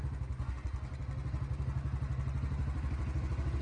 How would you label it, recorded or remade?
recorded